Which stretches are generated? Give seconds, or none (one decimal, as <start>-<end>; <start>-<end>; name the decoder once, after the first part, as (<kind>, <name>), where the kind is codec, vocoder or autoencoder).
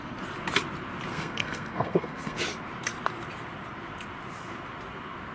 1.1-2.4 (codec, SNAC)